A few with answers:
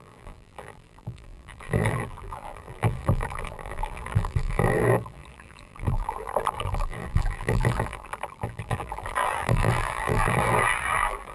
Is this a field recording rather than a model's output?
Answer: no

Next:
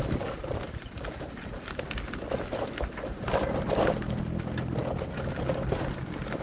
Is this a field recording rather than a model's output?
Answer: yes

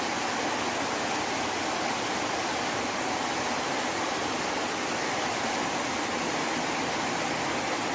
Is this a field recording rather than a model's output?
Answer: yes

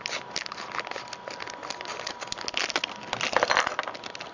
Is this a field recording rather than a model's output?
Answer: yes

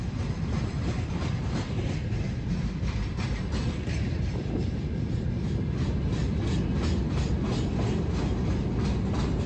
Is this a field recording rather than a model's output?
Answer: yes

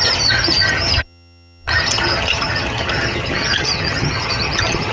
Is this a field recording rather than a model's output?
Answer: no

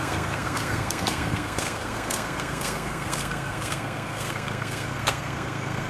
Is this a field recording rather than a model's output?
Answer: no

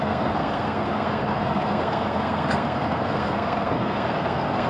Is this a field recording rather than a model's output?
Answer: no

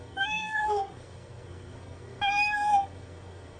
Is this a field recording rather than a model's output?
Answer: no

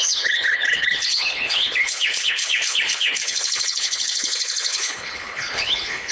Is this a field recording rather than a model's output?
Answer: no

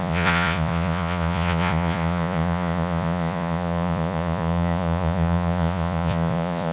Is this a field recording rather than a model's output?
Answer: no